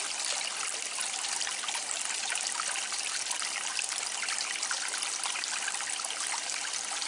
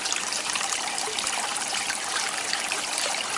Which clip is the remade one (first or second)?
second